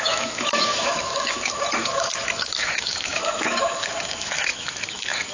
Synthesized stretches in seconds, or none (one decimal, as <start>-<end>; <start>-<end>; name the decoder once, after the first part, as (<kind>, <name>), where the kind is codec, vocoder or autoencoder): 0.0-5.3 (autoencoder, DAC-VAE)